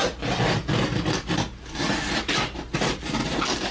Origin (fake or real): real